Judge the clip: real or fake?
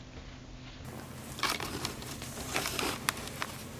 real